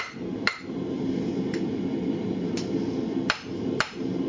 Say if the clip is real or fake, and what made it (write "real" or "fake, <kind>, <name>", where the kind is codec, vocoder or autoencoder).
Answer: real